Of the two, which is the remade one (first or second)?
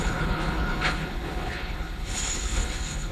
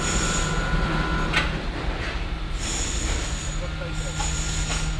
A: first